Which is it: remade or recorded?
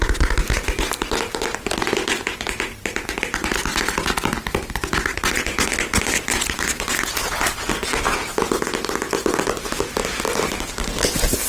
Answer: recorded